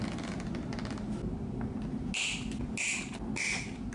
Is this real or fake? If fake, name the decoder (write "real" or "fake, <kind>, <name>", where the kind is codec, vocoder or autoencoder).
real